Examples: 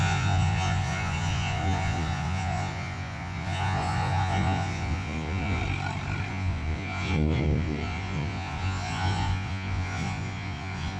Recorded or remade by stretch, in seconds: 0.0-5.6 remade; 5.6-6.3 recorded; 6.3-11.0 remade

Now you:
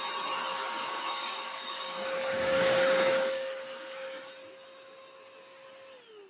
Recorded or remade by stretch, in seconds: 0.0-0.5 recorded; 0.5-4.3 remade; 4.3-6.3 recorded

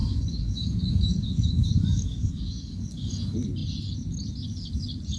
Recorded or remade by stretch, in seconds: 0.0-3.1 remade; 3.1-5.2 recorded

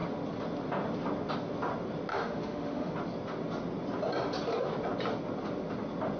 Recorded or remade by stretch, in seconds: 0.0-2.1 recorded; 2.1-2.9 remade; 2.9-6.2 recorded

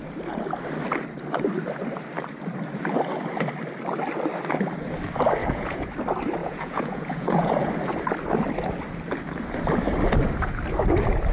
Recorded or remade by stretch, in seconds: 0.0-5.4 recorded; 5.4-5.9 remade; 5.9-6.4 recorded; 6.4-7.5 remade; 7.5-11.3 recorded